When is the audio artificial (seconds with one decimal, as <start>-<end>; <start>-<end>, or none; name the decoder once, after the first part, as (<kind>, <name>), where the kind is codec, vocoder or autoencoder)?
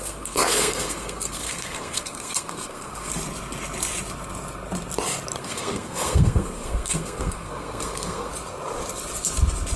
0.0-3.1 (codec, SNAC); 5.4-8.3